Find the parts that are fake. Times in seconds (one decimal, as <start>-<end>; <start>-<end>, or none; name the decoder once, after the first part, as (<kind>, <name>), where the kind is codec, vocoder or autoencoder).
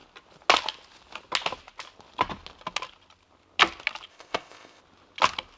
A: 4.1-4.8 (codec, ZipCodec)